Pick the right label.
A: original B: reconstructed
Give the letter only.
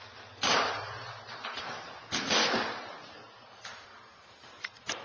A